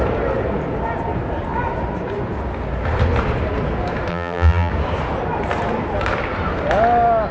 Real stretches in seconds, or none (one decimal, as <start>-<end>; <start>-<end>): 0.0-4.1; 4.7-7.3